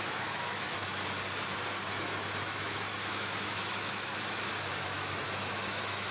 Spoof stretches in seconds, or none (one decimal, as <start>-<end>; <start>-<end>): 0.0-0.9; 1.9-6.1